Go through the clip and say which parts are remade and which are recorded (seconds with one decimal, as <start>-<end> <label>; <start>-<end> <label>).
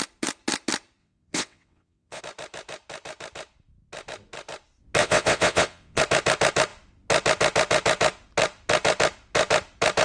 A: 0.0-1.0 recorded; 1.0-2.2 remade; 2.2-5.0 recorded; 5.0-6.0 remade; 6.0-10.0 recorded